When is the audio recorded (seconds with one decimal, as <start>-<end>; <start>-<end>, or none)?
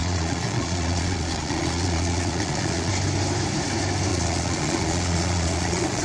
2.9-4.1